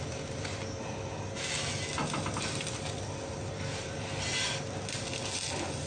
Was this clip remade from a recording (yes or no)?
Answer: no